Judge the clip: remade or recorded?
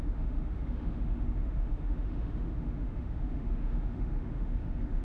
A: remade